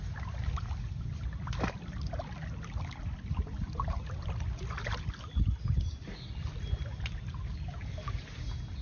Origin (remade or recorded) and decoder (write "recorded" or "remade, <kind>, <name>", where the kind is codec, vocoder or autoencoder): recorded